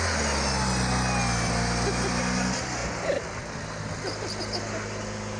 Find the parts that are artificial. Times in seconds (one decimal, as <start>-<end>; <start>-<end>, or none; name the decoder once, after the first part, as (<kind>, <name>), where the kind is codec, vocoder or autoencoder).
none